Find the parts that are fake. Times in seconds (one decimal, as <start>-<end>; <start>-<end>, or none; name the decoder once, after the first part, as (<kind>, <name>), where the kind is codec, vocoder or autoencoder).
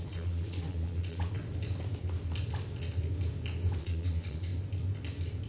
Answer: 0.0-1.4 (vocoder, Vocos); 3.8-4.5